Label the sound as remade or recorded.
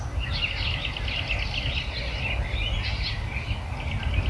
recorded